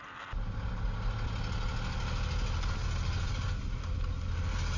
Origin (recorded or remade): recorded